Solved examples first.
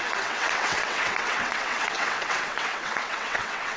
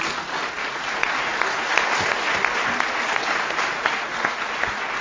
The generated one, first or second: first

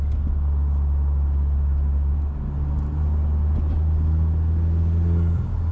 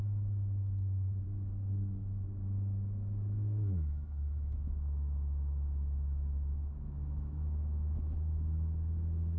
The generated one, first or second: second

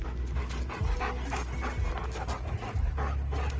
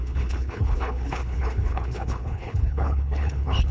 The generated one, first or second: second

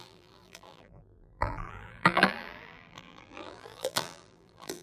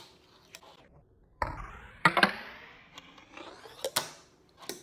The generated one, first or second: first